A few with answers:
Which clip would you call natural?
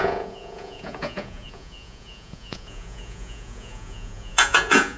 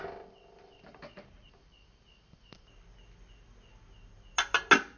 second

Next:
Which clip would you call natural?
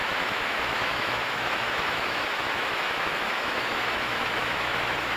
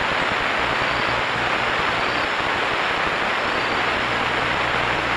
second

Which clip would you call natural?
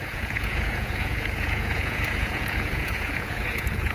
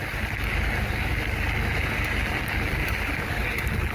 second